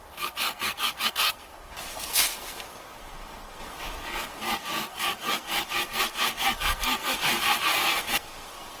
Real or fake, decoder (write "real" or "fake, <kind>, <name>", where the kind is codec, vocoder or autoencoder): fake, codec, SNAC